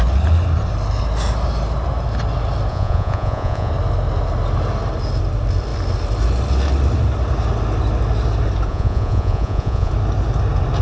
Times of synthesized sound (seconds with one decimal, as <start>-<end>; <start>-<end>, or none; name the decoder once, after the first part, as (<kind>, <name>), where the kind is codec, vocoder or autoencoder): 2.7-3.7 (vocoder, Vocos); 8.7-9.9